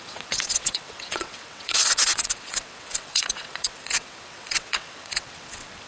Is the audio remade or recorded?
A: remade